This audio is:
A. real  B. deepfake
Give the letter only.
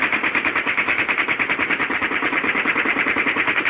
A